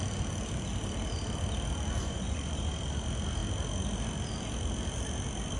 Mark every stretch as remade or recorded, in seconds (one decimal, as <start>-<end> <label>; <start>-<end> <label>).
0.0-2.0 recorded; 2.0-2.7 remade; 2.7-5.6 recorded